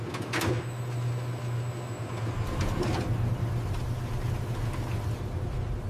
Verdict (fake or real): real